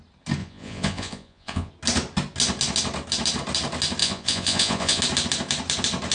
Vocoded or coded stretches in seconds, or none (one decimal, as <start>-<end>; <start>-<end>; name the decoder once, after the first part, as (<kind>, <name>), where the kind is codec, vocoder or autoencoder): 0.4-1.7 (vocoder, Vocos); 4.0-5.0